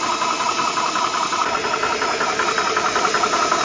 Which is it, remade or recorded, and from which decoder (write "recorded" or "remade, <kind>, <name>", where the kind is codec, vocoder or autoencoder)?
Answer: recorded